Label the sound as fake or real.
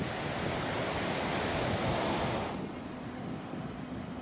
real